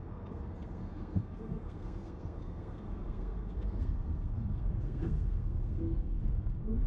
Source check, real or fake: fake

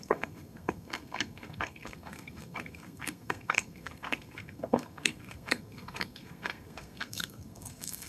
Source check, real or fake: fake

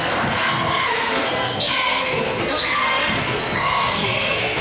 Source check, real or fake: fake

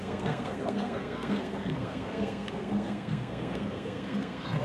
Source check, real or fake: fake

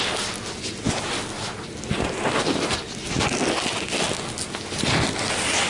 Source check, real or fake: real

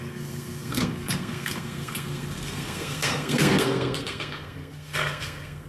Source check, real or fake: fake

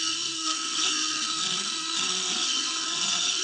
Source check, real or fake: fake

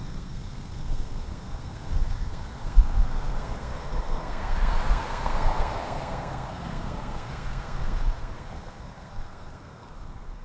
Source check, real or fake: fake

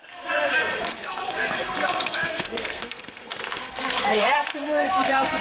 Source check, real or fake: fake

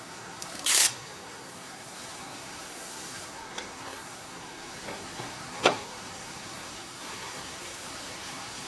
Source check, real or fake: fake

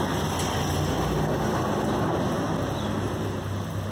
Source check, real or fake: real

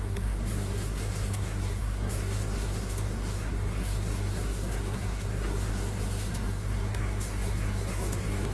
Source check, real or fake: fake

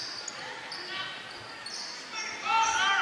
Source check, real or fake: real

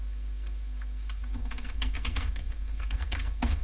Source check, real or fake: fake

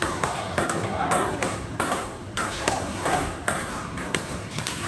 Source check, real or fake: fake